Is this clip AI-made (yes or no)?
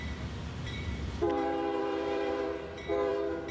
yes